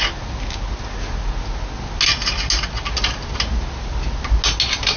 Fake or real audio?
real